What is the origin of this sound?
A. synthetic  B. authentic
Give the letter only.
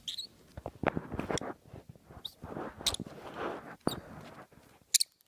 B